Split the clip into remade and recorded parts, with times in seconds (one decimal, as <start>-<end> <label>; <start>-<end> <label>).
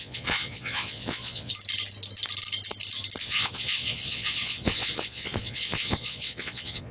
0.0-1.5 remade; 1.5-3.2 recorded; 3.2-6.9 remade